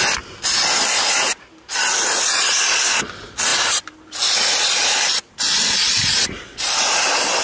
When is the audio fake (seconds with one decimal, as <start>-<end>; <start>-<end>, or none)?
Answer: none